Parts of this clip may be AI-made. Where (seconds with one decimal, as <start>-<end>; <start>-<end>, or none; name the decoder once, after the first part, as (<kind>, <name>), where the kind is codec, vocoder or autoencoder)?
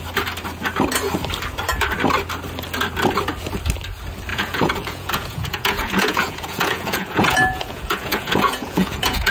4.3-9.3 (vocoder, Vocos)